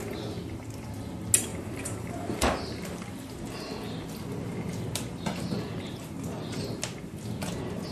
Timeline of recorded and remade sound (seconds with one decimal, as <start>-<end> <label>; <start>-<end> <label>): 0.0-1.5 recorded; 1.5-3.4 remade; 3.4-7.9 recorded